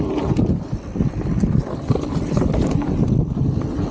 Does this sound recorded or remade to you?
recorded